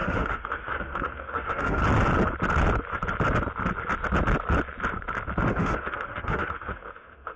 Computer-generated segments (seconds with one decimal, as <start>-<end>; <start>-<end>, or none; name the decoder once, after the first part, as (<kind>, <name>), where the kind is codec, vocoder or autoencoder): 0.0-1.8 (autoencoder, DAC-VAE); 5.5-7.4